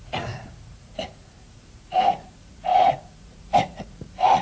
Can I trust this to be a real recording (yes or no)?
no